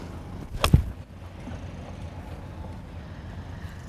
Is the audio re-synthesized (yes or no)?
no